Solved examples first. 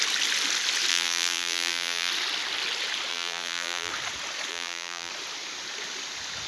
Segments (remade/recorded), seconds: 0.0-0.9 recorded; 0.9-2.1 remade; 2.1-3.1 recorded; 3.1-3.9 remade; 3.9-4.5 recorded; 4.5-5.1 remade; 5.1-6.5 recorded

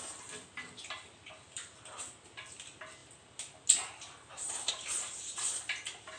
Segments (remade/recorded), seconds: 0.0-6.2 recorded

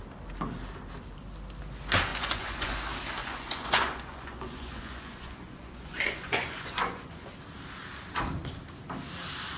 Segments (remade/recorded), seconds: 0.0-2.1 recorded; 2.1-2.8 remade; 2.8-3.2 recorded; 3.2-7.3 remade; 7.3-9.6 recorded